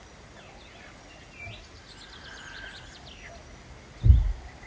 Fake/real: real